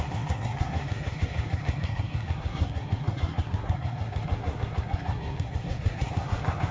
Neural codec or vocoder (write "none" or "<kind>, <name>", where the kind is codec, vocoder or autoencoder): codec, SNAC